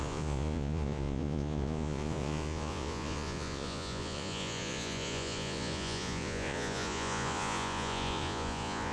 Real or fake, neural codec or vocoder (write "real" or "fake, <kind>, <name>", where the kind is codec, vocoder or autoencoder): fake, vocoder, Vocos